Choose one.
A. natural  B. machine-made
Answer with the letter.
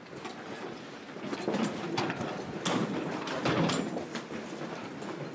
A